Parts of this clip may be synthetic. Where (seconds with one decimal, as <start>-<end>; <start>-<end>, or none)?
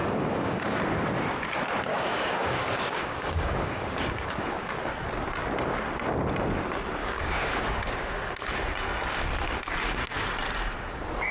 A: 0.0-0.8; 1.9-4.8; 7.0-8.3